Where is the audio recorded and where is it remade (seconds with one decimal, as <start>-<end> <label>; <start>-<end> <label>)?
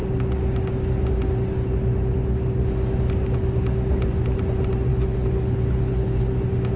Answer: 0.0-4.9 recorded; 4.9-6.2 remade; 6.2-6.8 recorded